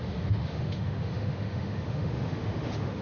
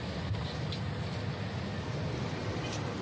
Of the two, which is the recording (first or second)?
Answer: second